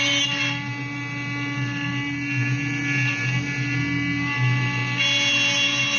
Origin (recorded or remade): recorded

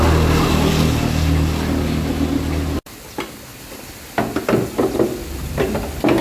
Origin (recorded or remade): recorded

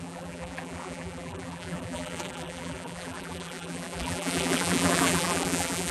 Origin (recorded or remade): remade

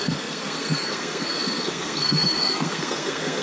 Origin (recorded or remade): remade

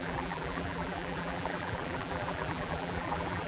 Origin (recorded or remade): remade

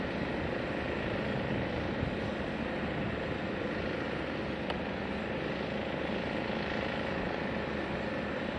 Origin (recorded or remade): recorded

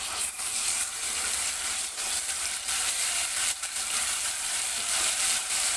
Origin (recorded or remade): remade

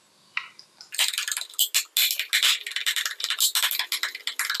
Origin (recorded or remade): recorded